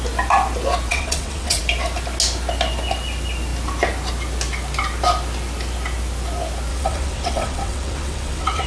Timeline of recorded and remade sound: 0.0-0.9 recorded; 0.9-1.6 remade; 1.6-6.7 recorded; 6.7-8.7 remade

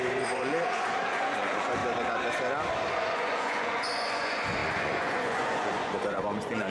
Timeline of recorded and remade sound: 0.0-1.8 remade; 1.8-2.9 recorded; 2.9-6.7 remade

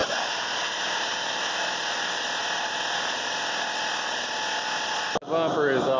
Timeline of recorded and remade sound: 0.0-6.0 recorded

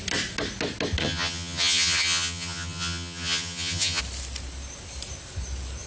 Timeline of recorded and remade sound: 0.0-1.0 recorded; 1.0-4.0 remade; 4.0-5.9 recorded